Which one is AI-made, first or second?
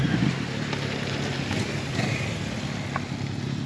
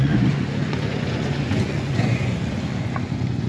second